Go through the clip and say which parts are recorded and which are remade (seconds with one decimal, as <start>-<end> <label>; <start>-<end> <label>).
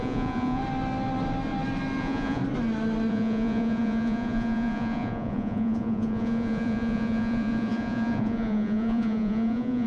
0.0-0.6 remade; 0.6-2.0 recorded; 2.0-2.4 remade; 2.4-3.1 recorded; 3.1-9.9 remade